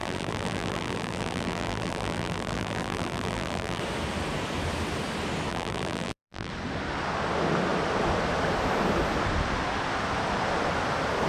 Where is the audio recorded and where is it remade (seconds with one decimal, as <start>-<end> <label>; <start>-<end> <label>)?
0.0-3.8 remade; 3.8-5.5 recorded; 5.5-6.5 remade; 6.5-11.3 recorded

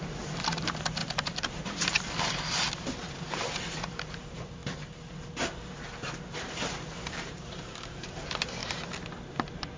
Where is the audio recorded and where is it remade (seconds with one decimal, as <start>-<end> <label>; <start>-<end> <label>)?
0.0-4.6 remade; 4.6-6.3 recorded; 6.3-8.6 remade; 8.6-9.3 recorded; 9.3-9.8 remade

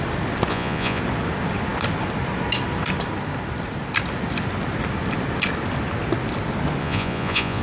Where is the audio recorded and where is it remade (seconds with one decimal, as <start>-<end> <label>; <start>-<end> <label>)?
0.0-0.5 recorded; 0.5-1.0 remade; 1.0-6.8 recorded; 6.8-7.6 remade

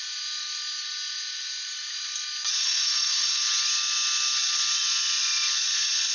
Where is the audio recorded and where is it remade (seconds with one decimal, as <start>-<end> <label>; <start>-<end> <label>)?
0.0-2.6 recorded; 2.6-3.4 remade; 3.4-6.1 recorded